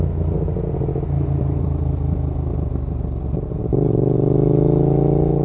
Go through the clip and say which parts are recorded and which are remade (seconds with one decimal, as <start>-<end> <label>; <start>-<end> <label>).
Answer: 0.0-5.4 recorded